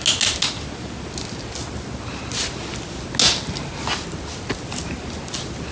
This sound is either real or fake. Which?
real